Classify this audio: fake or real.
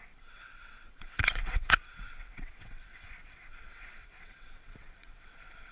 fake